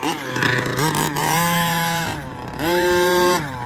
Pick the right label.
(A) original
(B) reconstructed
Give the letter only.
B